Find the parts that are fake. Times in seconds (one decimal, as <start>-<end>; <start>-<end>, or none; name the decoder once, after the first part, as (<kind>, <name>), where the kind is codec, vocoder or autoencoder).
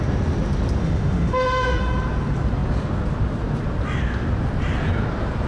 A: 0.8-1.8 (autoencoder, DAC-VAE)